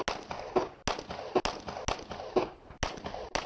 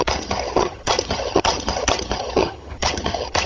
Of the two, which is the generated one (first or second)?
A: second